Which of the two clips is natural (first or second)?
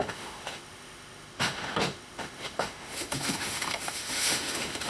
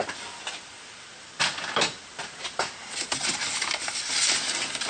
second